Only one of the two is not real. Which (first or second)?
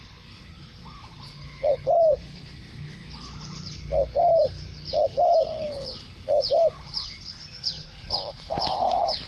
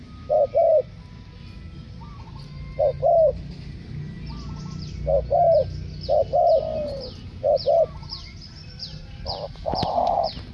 first